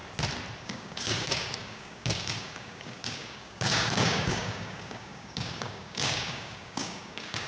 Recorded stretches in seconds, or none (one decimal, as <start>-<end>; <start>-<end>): 0.0-0.6